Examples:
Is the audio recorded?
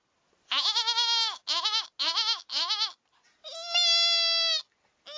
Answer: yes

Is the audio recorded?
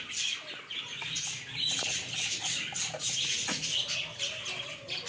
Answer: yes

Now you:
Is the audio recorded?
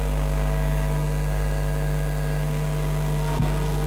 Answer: no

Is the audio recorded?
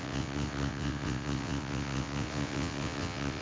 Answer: no